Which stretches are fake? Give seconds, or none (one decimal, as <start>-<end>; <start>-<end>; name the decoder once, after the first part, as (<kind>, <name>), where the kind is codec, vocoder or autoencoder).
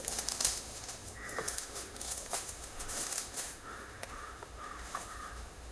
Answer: 0.0-5.7 (autoencoder, DAC-VAE)